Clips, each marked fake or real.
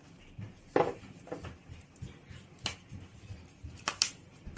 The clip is fake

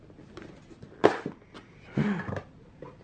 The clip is real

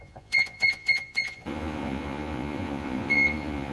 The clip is fake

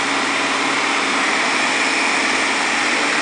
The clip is real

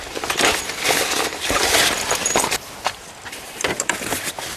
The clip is fake